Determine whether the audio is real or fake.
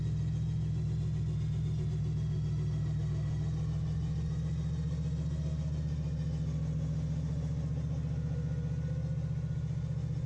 real